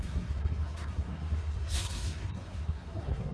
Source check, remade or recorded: remade